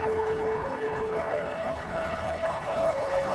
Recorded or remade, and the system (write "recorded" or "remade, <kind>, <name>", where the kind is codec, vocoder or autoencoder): remade, codec, HILCodec